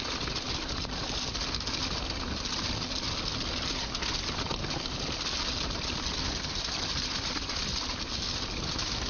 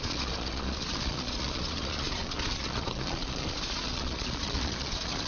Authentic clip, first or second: first